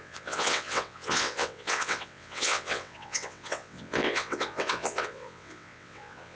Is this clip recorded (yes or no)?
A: no